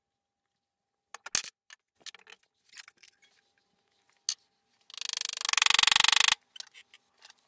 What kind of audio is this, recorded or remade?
recorded